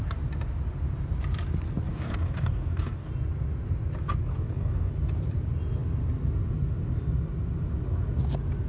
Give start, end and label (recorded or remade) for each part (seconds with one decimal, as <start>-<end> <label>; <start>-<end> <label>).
0.0-1.9 recorded; 1.9-3.1 remade; 3.1-4.3 recorded; 4.3-4.9 remade; 4.9-8.7 recorded